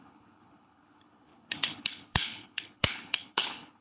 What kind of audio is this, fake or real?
fake